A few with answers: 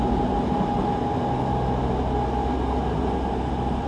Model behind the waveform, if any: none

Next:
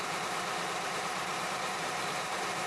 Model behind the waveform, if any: vocoder, BigVGAN v2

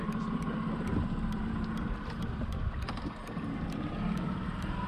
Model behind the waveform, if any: vocoder, BigVGAN v2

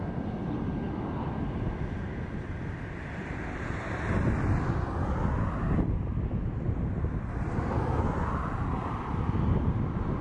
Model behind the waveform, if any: none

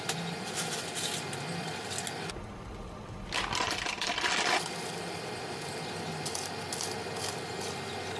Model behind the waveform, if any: none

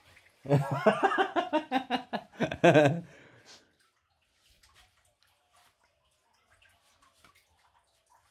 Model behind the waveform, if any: none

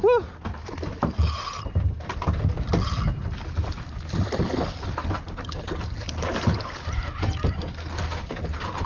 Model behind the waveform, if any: none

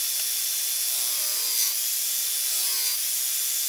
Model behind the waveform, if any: none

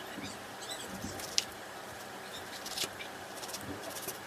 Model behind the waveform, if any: vocoder, BigVGAN v2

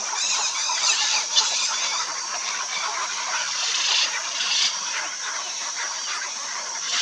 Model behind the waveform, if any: vocoder, BigVGAN v2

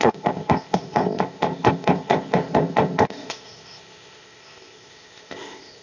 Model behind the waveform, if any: codec, ZipCodec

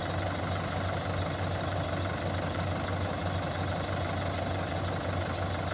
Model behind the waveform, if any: none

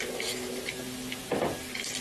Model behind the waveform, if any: none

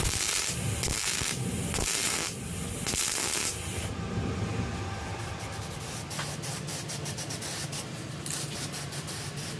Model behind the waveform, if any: none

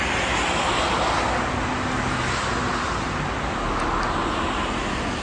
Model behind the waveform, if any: none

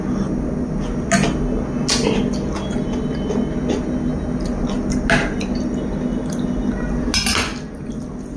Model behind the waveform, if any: none